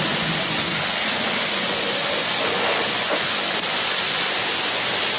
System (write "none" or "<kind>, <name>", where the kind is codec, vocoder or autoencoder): vocoder, Vocos